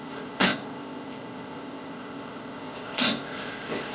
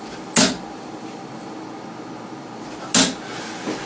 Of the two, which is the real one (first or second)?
second